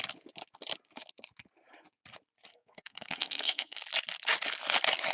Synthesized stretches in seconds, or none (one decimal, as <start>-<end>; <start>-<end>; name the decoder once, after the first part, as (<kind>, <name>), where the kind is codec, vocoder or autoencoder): 2.5-3.8 (codec, SNAC)